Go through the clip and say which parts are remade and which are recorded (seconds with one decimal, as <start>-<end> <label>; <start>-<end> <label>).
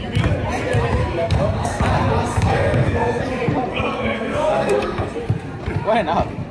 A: 0.0-1.0 recorded; 1.0-1.8 remade; 1.8-2.3 recorded; 2.3-3.2 remade; 3.2-3.7 recorded; 3.7-5.2 remade; 5.2-6.5 recorded